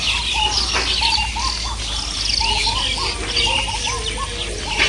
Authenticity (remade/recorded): recorded